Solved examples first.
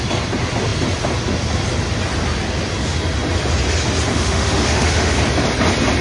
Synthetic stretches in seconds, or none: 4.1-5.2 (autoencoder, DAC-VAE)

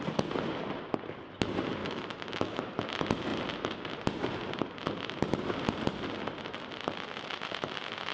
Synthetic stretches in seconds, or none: 1.8-2.6 (autoencoder, DAC-VAE)

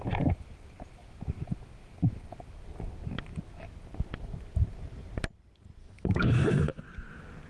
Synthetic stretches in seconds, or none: 5.8-6.8 (autoencoder, DAC-VAE)

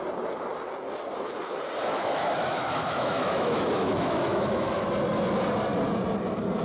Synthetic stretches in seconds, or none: 1.9-4.9 (autoencoder, DAC-VAE)

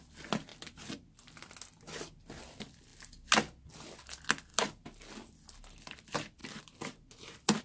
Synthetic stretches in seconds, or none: none

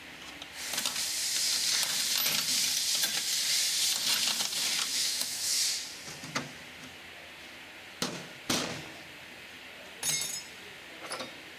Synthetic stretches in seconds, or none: 4.9-5.6 (autoencoder, DAC-VAE)

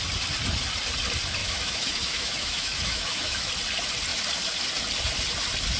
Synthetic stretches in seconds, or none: 1.4-3.5 (autoencoder, DAC-VAE)